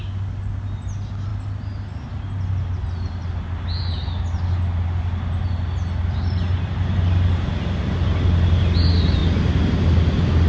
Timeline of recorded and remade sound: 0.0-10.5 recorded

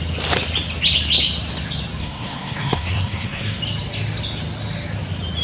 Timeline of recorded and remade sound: 0.0-2.0 recorded; 2.0-3.6 remade; 3.6-5.4 recorded